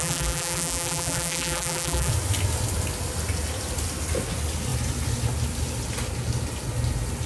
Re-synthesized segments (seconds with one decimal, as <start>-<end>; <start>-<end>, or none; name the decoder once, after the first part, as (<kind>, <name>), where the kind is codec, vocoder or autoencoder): 0.0-2.1 (vocoder, BigVGAN v2)